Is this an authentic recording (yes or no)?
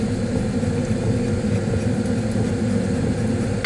yes